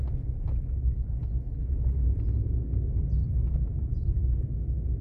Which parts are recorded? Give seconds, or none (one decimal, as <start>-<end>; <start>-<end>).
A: 0.0-5.0